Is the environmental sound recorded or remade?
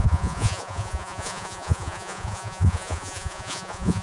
remade